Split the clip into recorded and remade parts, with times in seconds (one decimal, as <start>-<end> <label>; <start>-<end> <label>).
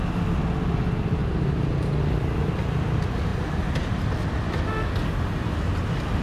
0.0-6.2 recorded